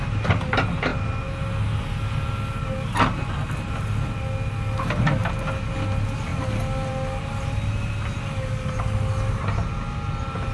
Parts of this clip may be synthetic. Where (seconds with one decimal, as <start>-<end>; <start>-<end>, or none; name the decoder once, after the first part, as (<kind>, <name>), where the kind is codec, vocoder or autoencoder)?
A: none